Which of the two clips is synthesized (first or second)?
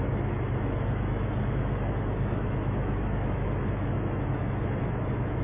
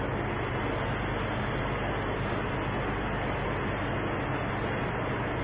first